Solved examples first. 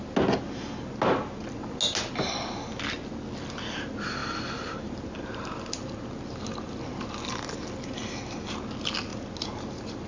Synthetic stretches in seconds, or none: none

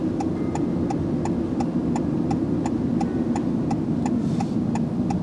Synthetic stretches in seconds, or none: none

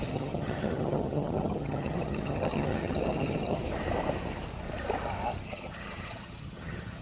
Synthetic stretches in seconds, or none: 0.0-3.6 (vocoder, HiFi-GAN); 5.4-7.0

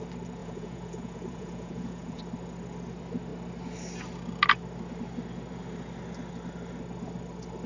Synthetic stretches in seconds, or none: 0.4-2.2 (vocoder, Vocos)

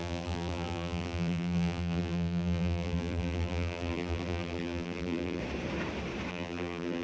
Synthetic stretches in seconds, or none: 0.0-5.4 (vocoder, BigVGAN v2); 6.3-7.0

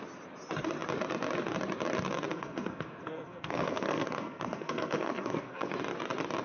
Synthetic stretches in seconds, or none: 2.3-5.7 (codec, SNAC)

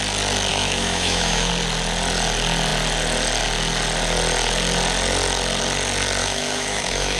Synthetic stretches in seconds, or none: 0.5-1.5 (autoencoder, DAC-VAE); 6.2-7.2

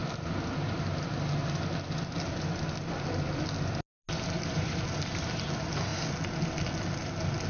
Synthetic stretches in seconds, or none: none